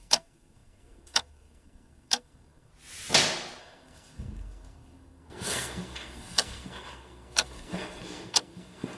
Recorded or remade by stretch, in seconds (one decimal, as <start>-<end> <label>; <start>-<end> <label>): 0.0-2.7 remade; 2.7-3.6 recorded; 3.6-9.0 remade